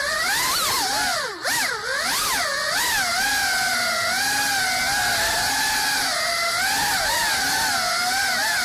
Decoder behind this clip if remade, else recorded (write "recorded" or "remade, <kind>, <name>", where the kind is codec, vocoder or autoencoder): recorded